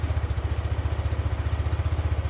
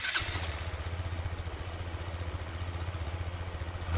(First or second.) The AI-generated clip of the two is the second